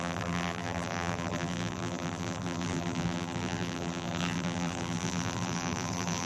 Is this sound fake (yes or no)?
yes